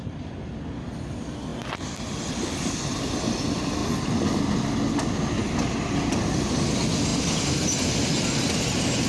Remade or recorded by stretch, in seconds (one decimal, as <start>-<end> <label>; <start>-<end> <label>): 0.0-9.1 recorded